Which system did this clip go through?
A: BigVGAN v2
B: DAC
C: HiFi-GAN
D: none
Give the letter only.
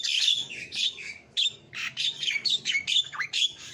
B